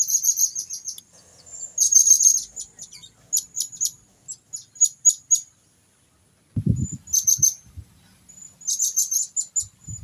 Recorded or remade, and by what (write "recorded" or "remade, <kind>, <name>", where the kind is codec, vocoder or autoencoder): recorded